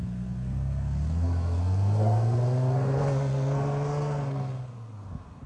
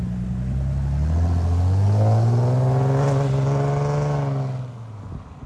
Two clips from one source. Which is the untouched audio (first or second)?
second